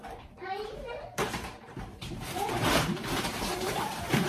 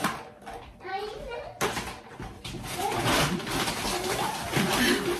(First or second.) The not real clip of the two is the first